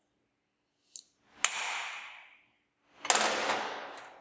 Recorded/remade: recorded